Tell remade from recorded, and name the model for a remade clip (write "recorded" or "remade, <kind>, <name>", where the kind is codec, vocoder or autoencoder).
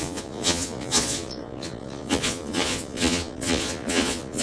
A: remade, vocoder, Vocos